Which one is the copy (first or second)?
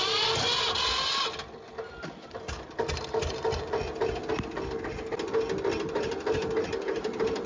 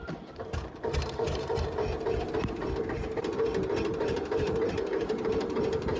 second